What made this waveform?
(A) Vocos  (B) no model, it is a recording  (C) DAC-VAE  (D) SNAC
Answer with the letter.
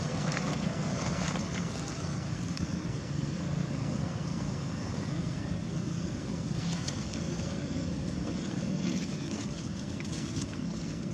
D